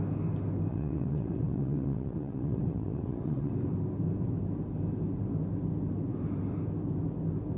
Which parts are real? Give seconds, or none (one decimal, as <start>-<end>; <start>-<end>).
0.0-0.7; 3.5-7.6